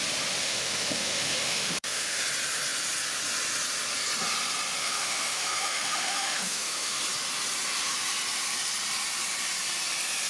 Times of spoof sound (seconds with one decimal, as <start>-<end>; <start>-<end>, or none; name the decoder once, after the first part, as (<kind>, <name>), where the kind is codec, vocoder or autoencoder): 0.4-2.2 (autoencoder, DAC-VAE); 4.8-7.0